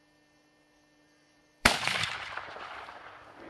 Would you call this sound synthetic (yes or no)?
yes